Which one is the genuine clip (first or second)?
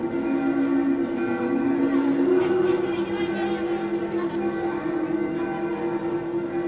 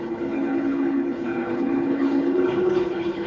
first